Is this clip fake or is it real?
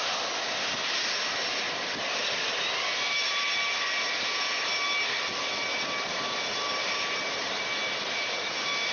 real